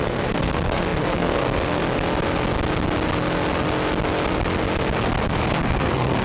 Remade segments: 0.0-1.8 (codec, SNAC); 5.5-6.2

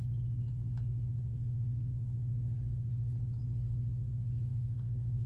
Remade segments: 1.3-1.9 (codec, SNAC); 4.5-5.3

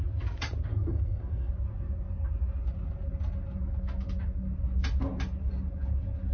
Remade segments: 0.7-1.5 (codec, SNAC)

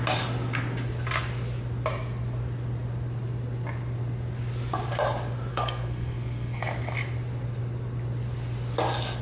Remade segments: 5.5-6.6 (codec, SNAC)

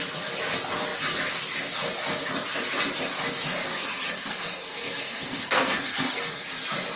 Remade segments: 3.7-6.4 (codec, SNAC)

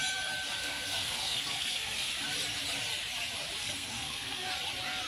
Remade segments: 0.6-2.1 (codec, SNAC); 3.6-4.5

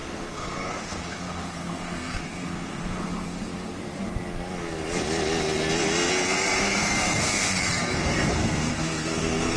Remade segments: 0.0-3.5 (codec, SNAC); 6.6-9.6

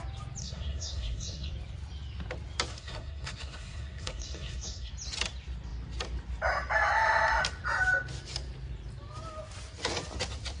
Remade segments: 0.4-1.5 (codec, SNAC); 2.7-4.9